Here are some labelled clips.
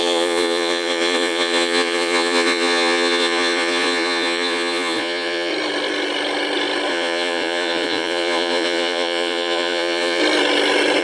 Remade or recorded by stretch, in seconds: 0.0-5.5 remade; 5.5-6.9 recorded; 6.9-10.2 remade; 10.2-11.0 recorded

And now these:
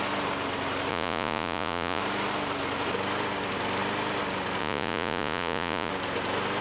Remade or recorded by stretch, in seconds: 0.0-0.9 recorded; 0.9-2.0 remade; 2.0-4.6 recorded; 4.6-5.9 remade; 5.9-6.6 recorded